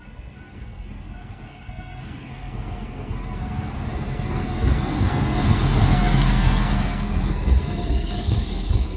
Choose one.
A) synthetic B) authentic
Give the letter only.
A